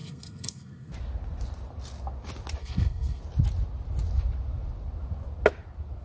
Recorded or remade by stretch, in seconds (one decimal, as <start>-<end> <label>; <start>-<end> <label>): 0.0-0.9 remade; 0.9-2.6 recorded; 2.6-3.2 remade; 3.2-6.0 recorded